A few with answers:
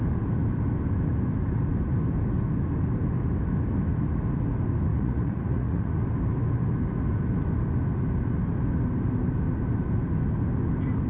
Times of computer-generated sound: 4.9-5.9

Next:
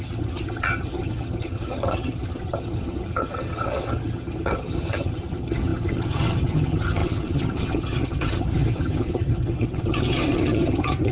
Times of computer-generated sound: 0.0-11.1

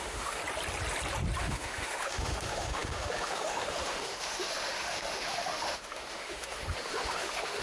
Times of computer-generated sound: 0.0-0.4; 1.4-7.6